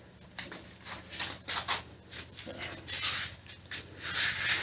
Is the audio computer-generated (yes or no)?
no